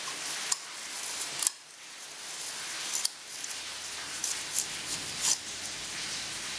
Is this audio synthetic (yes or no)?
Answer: no